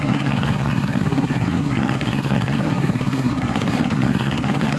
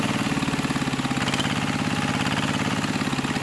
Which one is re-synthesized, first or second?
first